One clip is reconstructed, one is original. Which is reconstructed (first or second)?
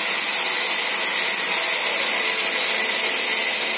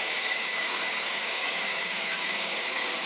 second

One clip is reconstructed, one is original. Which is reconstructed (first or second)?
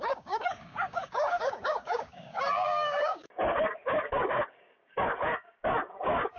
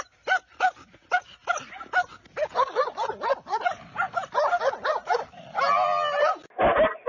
first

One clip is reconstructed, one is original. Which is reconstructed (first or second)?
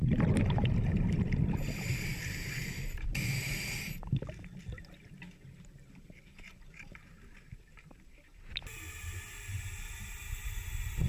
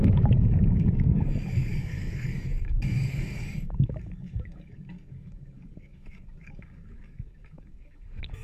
second